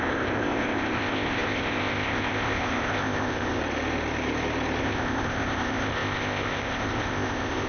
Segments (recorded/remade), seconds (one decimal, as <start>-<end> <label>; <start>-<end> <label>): 0.0-3.6 remade; 3.6-4.8 recorded; 4.8-7.7 remade